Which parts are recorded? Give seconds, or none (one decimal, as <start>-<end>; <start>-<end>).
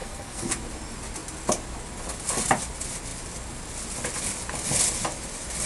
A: 0.5-5.7